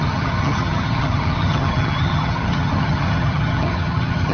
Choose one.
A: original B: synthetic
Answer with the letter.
B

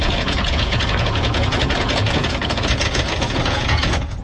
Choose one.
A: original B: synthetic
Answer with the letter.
B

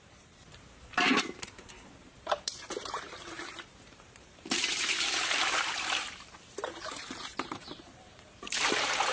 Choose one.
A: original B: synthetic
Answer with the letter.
B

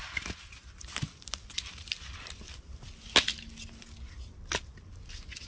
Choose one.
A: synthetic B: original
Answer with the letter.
B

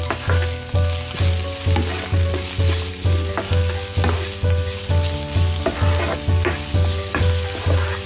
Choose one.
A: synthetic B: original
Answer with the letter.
B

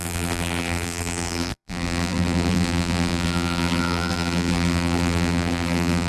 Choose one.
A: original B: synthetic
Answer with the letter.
B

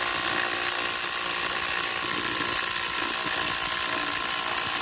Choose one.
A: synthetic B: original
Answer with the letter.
B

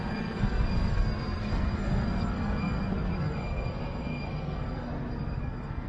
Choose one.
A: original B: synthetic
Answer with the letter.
B